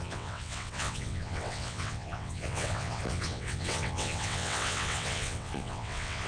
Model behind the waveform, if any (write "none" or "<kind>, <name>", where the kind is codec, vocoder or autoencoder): vocoder, WaveNeXt